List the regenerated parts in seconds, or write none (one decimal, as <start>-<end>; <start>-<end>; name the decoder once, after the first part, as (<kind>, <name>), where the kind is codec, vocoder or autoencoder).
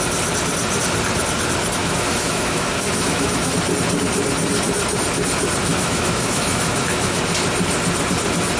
1.8-3.5 (autoencoder, DAC-VAE); 5.7-7.2